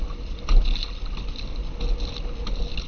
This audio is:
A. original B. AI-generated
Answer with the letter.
A